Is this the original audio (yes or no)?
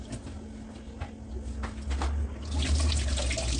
yes